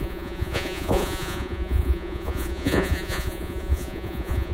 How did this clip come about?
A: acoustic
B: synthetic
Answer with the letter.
B